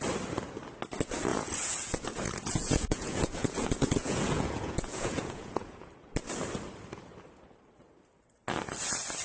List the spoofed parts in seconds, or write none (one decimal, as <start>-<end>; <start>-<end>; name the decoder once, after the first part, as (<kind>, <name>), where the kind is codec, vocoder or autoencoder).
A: 1.3-5.9 (vocoder, Vocos)